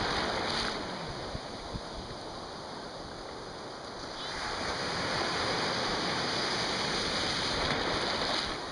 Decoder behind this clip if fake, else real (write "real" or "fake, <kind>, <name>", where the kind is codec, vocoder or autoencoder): real